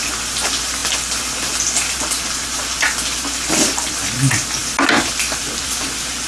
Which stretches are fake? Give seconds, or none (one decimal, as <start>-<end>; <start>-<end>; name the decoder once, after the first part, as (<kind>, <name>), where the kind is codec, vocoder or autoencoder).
none